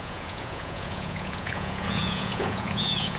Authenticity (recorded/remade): remade